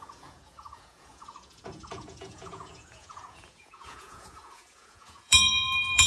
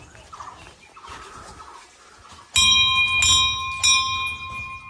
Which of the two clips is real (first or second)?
second